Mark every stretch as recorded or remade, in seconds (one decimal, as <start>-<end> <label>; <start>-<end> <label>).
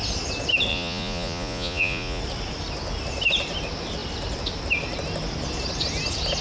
0.0-0.7 recorded; 0.7-2.2 remade; 2.2-6.4 recorded